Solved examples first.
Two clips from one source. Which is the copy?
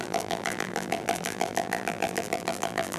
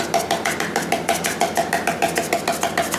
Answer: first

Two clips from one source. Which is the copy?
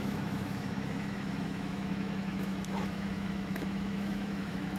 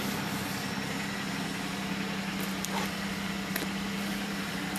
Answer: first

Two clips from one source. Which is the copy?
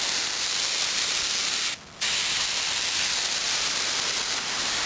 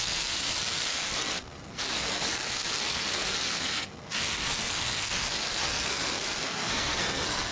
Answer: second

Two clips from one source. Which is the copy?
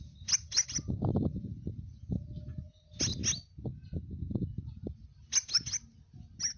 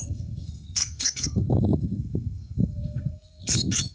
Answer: second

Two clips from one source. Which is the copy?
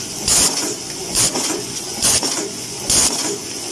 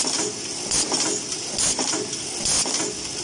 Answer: first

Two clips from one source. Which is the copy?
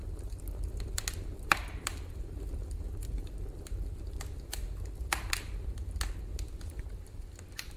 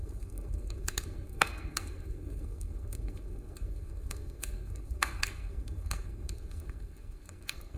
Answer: second